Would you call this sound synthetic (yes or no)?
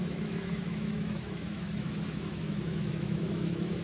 yes